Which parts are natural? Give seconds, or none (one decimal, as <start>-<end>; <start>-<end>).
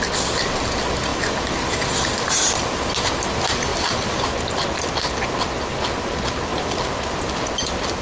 0.0-8.0